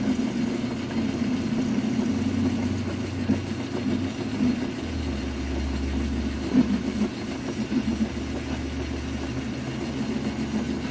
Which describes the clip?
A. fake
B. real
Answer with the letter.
B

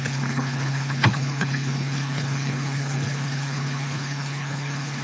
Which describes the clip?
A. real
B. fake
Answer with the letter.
B